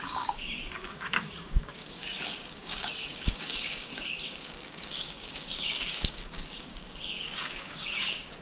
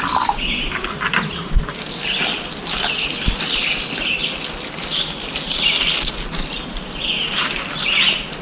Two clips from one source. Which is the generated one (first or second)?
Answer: first